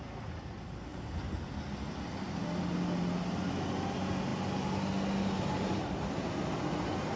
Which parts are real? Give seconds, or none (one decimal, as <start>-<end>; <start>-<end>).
0.0-7.2